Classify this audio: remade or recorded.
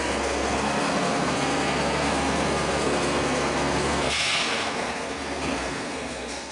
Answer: remade